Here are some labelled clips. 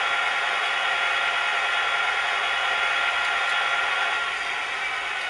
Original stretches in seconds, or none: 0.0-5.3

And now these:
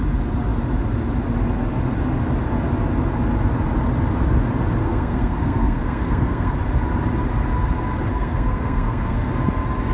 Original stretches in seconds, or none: 0.0-4.8; 6.5-8.1; 9.3-9.9